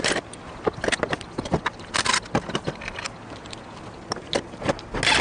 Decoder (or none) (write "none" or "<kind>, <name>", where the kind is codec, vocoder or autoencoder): none